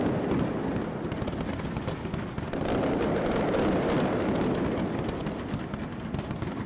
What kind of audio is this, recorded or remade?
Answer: recorded